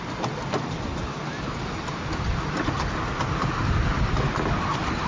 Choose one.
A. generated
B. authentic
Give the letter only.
B